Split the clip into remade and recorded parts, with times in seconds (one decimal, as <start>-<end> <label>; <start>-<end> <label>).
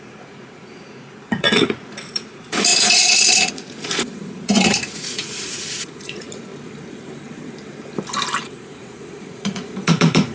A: 0.0-6.5 remade; 6.5-8.4 recorded; 8.4-10.3 remade